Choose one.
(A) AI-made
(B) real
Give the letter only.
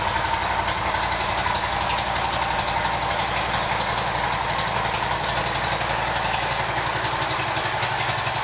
B